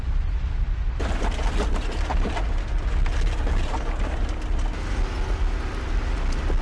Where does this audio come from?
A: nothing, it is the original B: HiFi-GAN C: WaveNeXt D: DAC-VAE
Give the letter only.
A